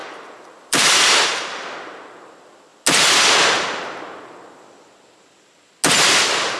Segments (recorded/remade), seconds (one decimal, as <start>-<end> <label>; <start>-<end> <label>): 0.0-0.8 remade; 0.8-6.6 recorded

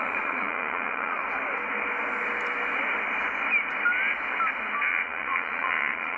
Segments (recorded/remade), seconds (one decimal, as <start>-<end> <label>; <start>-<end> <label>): 0.0-1.2 remade; 1.2-4.9 recorded; 4.9-6.2 remade

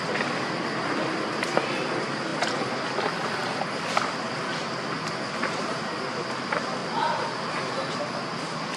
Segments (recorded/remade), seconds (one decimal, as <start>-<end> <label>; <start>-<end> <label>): 0.0-8.8 recorded

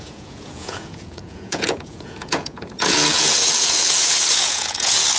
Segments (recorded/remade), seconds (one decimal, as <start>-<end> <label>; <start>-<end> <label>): 0.0-5.2 remade

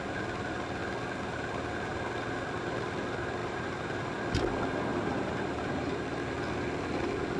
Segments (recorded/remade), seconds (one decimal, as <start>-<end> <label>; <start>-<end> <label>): 0.0-3.4 recorded; 3.4-4.0 remade; 4.0-4.9 recorded; 4.9-5.9 remade; 5.9-7.4 recorded

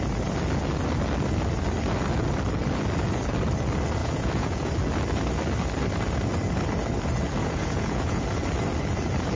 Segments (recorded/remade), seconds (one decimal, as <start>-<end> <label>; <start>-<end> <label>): 0.0-4.0 recorded; 4.0-4.7 remade; 4.7-7.4 recorded; 7.4-8.2 remade; 8.2-9.4 recorded

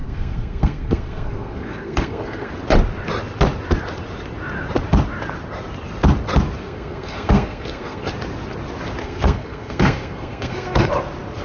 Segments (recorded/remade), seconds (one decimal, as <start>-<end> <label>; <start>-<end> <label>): 0.0-2.5 remade; 2.5-6.6 recorded; 6.6-8.1 remade; 8.1-9.0 recorded; 9.0-10.9 remade; 10.9-11.4 recorded

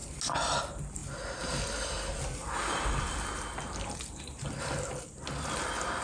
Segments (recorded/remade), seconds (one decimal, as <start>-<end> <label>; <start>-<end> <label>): 0.0-6.0 recorded